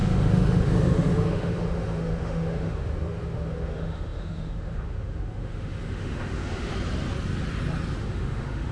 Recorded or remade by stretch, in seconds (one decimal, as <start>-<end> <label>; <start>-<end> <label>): 0.0-6.7 remade; 6.7-8.0 recorded; 8.0-8.7 remade